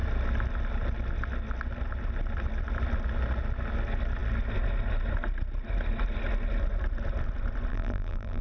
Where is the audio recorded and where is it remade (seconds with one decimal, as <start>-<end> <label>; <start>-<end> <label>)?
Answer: 0.0-7.7 recorded; 7.7-8.4 remade